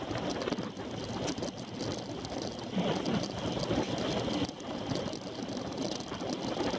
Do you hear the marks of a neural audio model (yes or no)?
no